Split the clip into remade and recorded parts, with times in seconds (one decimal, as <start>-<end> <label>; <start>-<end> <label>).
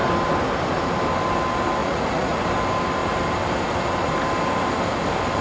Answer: 0.0-1.8 recorded; 1.8-2.4 remade; 2.4-5.4 recorded